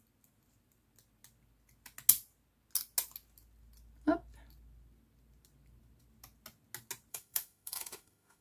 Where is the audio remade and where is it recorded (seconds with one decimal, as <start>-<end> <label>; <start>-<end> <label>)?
0.0-7.1 recorded; 7.1-8.4 remade